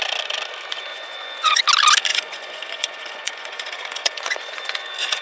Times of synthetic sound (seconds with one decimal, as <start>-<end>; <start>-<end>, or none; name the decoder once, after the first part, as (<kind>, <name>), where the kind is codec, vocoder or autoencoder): 0.9-1.6 (vocoder, Vocos); 2.1-5.2